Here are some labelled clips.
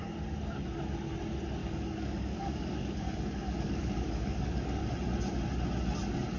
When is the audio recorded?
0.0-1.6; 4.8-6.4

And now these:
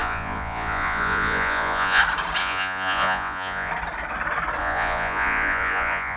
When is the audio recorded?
2.0-2.4; 3.7-4.6